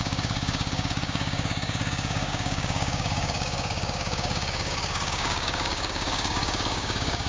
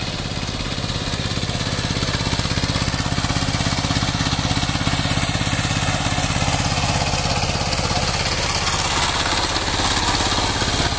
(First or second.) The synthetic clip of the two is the first